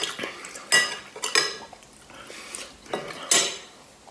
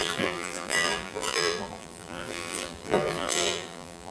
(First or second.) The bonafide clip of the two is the first